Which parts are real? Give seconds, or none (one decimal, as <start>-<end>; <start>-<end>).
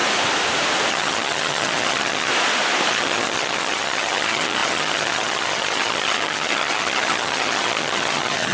0.0-0.9; 2.3-2.9